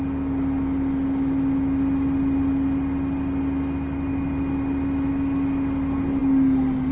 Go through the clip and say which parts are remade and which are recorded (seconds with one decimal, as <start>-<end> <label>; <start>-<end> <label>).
0.0-6.9 recorded